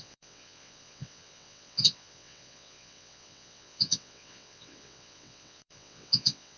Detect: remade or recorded remade